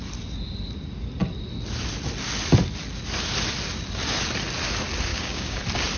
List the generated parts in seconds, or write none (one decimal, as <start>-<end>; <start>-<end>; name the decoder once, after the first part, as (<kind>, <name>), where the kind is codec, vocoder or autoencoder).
5.1-5.6 (codec, DAC)

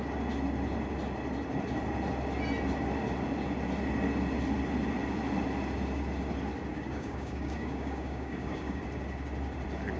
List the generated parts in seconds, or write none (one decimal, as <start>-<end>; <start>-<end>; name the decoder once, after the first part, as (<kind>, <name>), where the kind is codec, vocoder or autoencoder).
6.7-8.8 (codec, DAC)

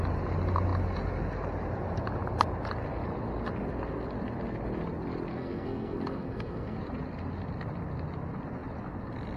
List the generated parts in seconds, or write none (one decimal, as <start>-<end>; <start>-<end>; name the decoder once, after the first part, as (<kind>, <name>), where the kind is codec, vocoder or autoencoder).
5.3-6.8 (codec, SNAC)

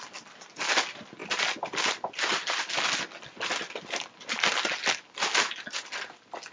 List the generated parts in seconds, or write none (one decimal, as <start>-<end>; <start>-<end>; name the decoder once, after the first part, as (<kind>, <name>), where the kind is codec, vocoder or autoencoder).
none